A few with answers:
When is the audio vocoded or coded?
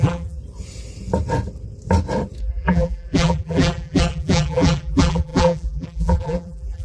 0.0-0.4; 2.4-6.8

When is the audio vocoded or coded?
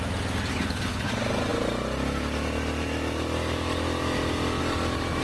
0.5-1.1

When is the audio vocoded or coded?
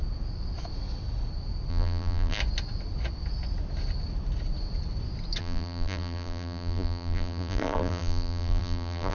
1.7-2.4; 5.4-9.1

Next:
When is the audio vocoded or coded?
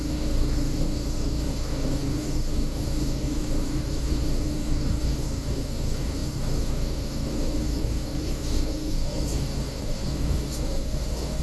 0.0-11.4